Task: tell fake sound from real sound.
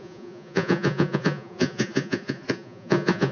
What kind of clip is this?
fake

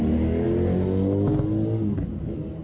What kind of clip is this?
real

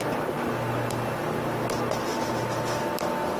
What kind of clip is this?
real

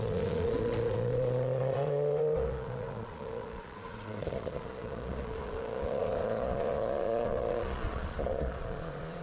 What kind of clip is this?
fake